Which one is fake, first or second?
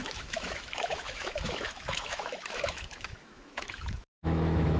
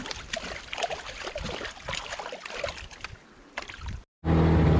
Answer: first